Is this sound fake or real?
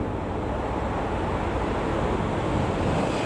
real